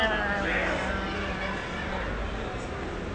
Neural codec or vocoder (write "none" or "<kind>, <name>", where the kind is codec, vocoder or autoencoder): none